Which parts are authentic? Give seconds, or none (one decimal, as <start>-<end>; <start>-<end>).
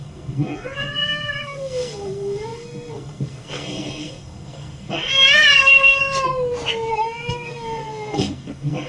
6.0-6.9